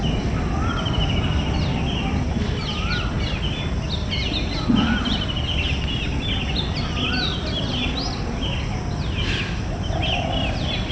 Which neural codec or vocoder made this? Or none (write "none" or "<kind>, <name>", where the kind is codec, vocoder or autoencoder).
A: none